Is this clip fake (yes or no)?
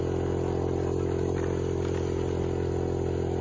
no